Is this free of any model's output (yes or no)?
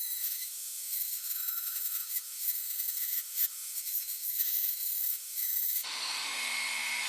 no